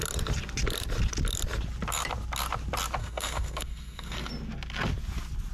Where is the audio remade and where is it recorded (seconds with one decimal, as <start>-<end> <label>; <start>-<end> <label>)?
0.0-3.0 recorded; 3.0-4.3 remade; 4.3-5.5 recorded